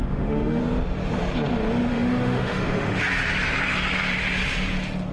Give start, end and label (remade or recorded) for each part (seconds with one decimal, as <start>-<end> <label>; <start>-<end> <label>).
0.0-0.6 remade; 0.6-1.9 recorded; 1.9-3.0 remade; 3.0-5.1 recorded